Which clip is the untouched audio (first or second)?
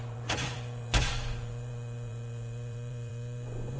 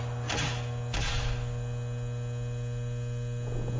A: second